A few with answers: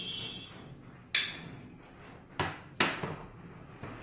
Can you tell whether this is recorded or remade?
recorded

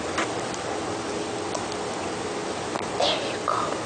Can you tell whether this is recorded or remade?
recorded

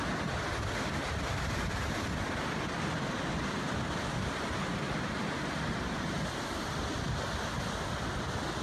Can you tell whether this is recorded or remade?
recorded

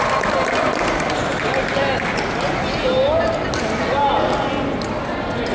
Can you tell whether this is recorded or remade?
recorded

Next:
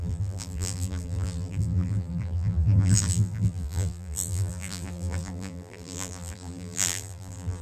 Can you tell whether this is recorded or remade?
remade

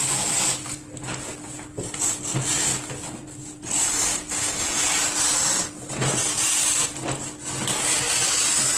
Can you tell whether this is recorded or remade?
remade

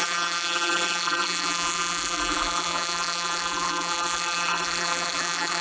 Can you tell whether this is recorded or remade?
remade